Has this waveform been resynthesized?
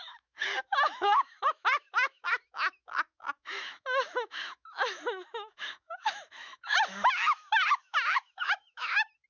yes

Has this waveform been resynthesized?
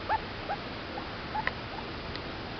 no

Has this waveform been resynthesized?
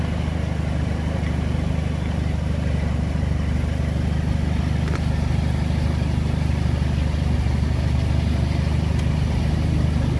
no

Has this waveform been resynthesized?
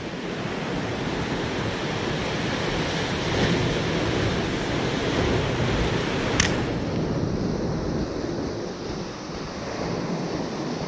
no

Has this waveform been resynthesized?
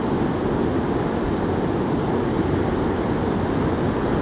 no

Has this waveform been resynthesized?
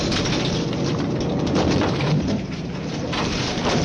yes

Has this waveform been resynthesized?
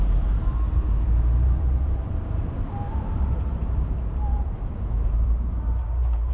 yes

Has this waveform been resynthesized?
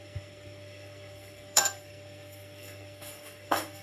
yes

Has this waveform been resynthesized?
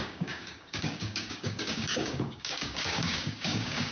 yes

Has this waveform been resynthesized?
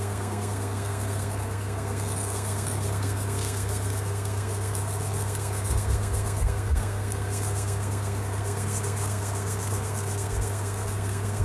yes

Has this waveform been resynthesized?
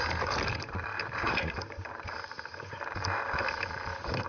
yes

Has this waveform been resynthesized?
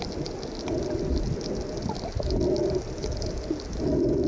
no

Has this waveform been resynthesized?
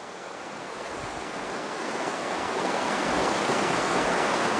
yes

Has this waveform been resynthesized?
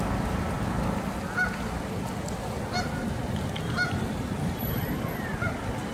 no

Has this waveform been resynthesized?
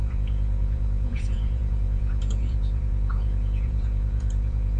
yes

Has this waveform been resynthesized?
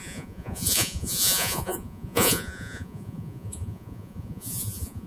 yes